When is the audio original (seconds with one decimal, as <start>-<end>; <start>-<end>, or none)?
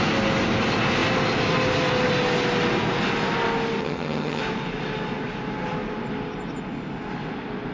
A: 0.0-3.8; 4.4-7.7